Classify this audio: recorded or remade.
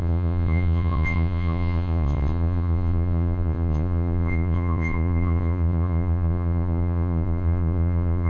remade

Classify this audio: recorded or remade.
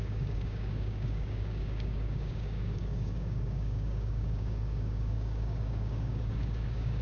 remade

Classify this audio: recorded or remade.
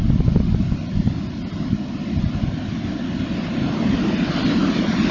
recorded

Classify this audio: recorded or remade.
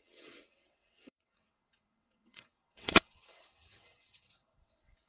remade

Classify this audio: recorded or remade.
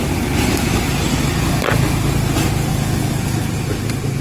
recorded